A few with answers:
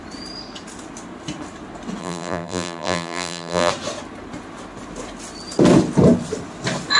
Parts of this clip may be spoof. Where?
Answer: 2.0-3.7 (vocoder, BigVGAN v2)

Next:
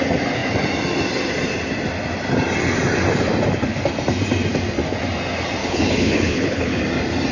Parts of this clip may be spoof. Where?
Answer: 5.6-6.8 (codec, HILCodec)

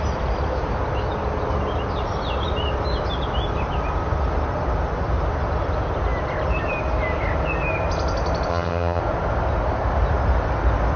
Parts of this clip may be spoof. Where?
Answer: 8.5-9.0 (vocoder, HiFi-GAN)

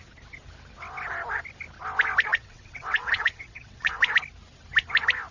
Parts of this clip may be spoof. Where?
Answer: 2.3-4.0 (vocoder, WaveNeXt)

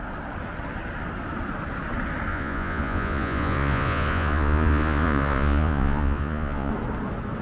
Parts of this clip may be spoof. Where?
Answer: 2.3-6.7 (vocoder, Vocos)